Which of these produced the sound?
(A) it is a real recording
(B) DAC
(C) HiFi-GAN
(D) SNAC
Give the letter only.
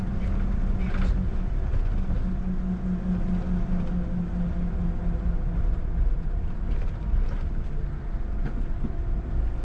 A